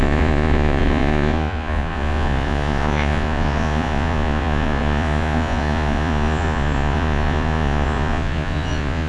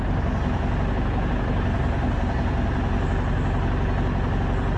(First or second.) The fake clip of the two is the first